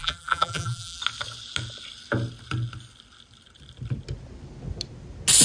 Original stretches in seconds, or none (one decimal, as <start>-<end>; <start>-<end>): 1.0-5.4